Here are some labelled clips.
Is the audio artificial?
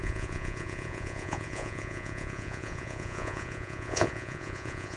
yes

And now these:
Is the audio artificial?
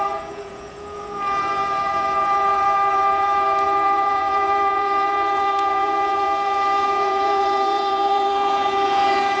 yes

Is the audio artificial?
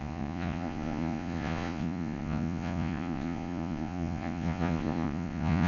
yes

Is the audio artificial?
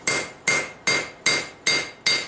no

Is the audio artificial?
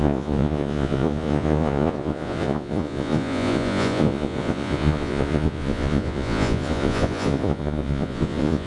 yes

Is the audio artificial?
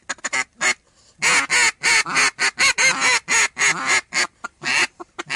no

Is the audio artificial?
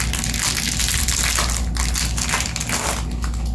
no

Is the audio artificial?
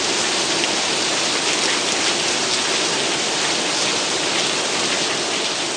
no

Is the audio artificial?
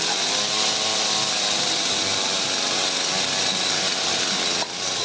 no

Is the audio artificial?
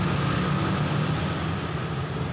no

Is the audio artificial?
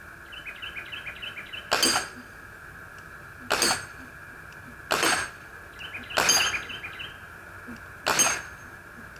no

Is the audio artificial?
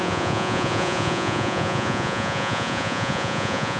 yes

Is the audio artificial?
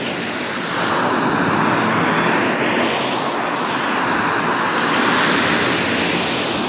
no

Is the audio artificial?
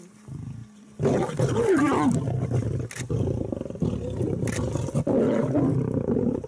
no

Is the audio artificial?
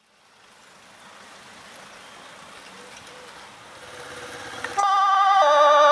no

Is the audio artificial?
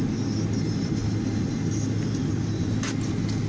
no